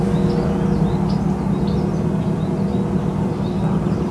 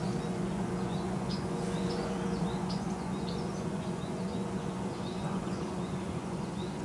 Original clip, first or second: first